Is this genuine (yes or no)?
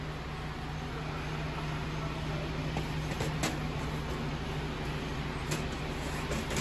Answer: yes